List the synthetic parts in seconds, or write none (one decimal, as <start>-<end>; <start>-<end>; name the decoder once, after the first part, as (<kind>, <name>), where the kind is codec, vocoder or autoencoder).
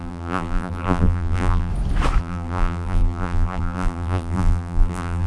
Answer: 0.0-1.7 (vocoder, BigVGAN v2); 2.2-5.3